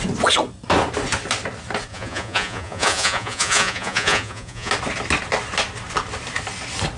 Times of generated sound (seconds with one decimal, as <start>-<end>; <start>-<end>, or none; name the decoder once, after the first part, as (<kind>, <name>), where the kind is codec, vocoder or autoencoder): 1.9-4.7 (vocoder, Vocos)